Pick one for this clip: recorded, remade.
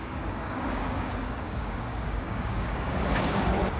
remade